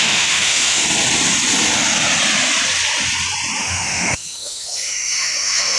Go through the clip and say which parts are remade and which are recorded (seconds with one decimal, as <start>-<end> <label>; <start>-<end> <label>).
0.0-0.8 remade; 0.8-3.6 recorded; 3.6-5.8 remade